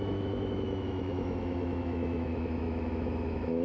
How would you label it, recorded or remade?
remade